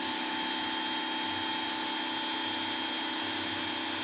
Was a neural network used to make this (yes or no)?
no